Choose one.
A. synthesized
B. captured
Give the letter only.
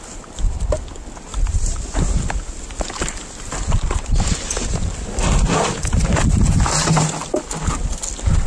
B